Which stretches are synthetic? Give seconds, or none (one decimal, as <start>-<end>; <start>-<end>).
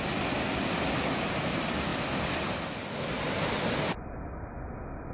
none